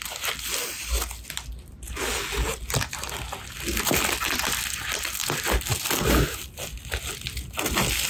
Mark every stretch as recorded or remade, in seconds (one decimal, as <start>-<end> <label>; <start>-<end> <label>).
0.0-8.1 recorded